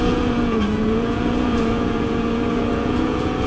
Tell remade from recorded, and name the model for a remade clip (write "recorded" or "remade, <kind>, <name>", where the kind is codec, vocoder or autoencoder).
remade, vocoder, Vocos